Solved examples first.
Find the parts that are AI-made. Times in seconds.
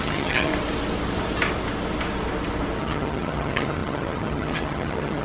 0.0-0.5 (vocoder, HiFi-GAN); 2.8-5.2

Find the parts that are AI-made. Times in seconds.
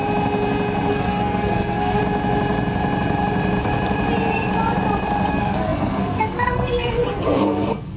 0.9-2.0 (codec, SNAC); 5.3-8.0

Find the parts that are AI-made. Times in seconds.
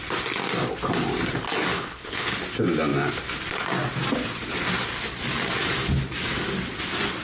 1.7-2.3 (codec, HILCodec)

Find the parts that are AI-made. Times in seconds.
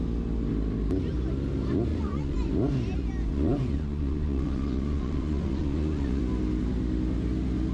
1.9-2.5 (vocoder, Vocos); 3.3-6.2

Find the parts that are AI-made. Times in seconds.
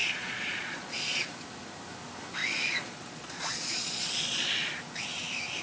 0.0-1.2 (vocoder, Vocos); 2.4-4.7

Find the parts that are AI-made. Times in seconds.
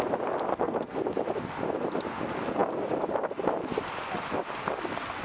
0.5-1.0 (codec, SNAC)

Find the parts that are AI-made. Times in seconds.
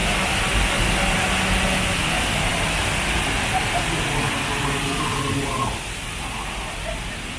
none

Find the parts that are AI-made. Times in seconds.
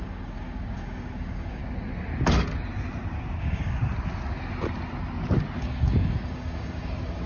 0.0-1.6 (codec, DAC); 3.4-3.8; 5.6-7.3